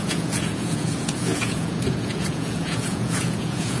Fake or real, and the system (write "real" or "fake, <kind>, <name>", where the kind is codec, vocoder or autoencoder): fake, vocoder, Vocos